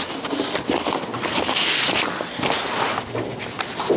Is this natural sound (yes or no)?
yes